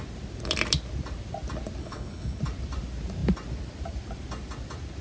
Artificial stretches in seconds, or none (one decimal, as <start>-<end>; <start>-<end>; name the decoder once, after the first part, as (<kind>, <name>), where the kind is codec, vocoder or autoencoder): 1.8-2.4 (codec, HILCodec)